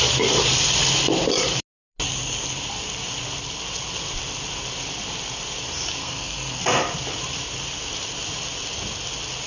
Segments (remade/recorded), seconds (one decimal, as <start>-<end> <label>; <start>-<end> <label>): 0.0-6.0 recorded; 6.0-6.6 remade; 6.6-9.5 recorded